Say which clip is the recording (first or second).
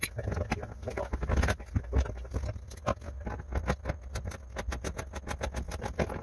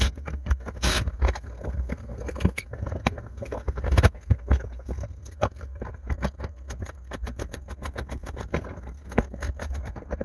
first